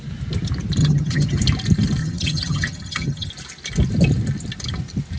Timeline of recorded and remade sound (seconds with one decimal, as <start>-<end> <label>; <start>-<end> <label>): 0.0-0.8 recorded; 0.8-1.4 remade; 1.4-2.0 recorded; 2.0-3.3 remade; 3.3-5.2 recorded